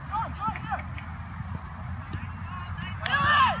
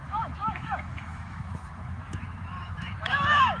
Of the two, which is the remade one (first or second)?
second